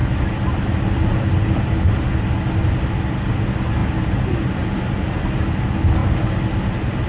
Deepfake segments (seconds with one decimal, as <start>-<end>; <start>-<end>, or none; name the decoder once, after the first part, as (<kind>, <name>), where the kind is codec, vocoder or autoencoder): 3.8-4.9 (vocoder, BigVGAN v2); 6.0-6.6